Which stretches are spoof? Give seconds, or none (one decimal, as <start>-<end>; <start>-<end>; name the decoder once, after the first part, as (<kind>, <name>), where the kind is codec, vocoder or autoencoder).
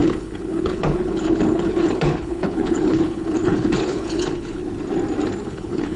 0.0-4.6 (codec, HILCodec); 5.4-6.0